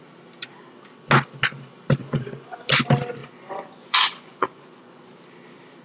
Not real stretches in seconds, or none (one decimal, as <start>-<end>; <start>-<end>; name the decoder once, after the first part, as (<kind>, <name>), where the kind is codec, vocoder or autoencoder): 2.0-2.8 (vocoder, Vocos); 3.2-5.1